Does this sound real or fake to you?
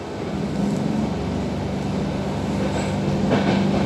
real